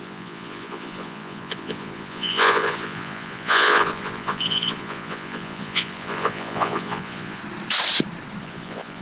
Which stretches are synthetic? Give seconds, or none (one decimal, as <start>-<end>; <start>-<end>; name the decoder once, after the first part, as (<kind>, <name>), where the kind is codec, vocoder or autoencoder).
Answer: 0.0-7.4 (vocoder, Vocos); 8.4-9.0